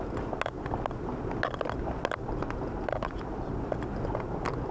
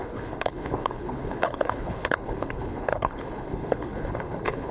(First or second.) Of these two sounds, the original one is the first